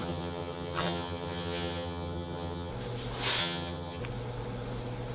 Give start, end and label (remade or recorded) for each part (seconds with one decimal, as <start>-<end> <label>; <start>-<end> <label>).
0.0-2.7 remade; 2.7-3.4 recorded; 3.4-4.0 remade; 4.0-5.1 recorded